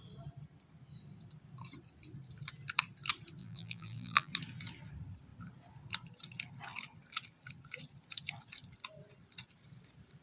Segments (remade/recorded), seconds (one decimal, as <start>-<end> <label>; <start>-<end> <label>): 0.0-3.4 recorded; 3.4-4.3 remade; 4.3-10.2 recorded